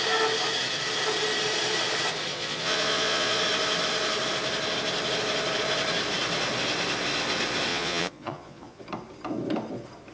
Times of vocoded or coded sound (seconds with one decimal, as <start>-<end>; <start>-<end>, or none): 2.3-3.4; 7.7-8.8